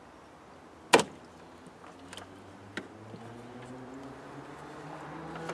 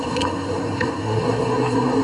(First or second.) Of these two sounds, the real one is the first